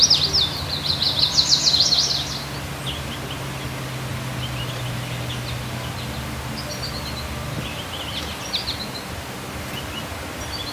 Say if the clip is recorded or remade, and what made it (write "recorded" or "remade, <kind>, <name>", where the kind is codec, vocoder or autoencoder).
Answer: recorded